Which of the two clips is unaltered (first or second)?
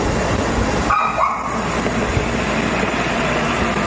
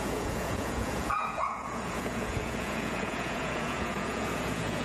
first